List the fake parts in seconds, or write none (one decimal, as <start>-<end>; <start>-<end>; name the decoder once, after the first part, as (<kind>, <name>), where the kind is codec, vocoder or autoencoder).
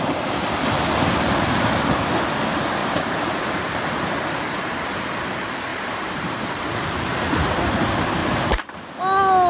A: 2.8-4.8 (vocoder, BigVGAN v2); 5.7-6.5; 8.2-8.8